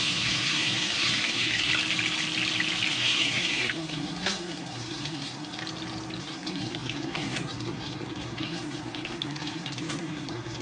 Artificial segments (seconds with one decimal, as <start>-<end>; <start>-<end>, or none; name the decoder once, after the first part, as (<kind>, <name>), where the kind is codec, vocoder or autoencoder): 0.0-1.7 (codec, SNAC); 2.9-5.6; 6.2-10.6